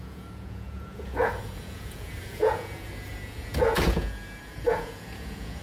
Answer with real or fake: fake